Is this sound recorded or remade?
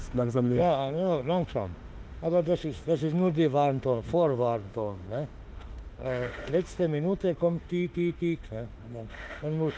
remade